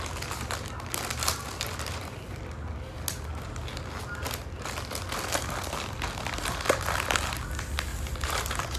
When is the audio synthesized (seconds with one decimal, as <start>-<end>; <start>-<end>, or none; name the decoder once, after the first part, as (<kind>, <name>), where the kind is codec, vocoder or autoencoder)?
7.9-8.8 (vocoder, BigVGAN v2)